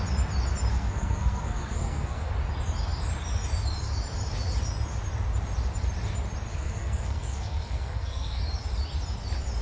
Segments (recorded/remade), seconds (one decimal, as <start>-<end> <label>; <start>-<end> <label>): 0.0-0.7 recorded; 0.7-2.3 remade; 2.3-6.5 recorded; 6.5-8.4 remade; 8.4-9.6 recorded